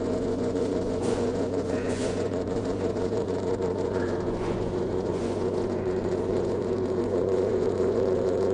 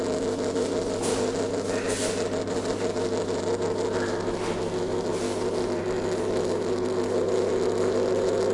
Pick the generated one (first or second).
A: first